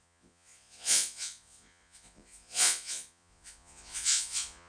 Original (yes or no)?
no